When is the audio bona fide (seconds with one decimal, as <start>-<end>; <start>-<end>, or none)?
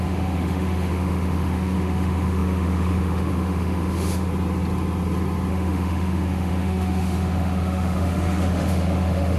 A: 4.3-5.5